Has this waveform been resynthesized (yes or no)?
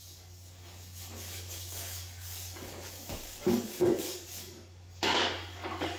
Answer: yes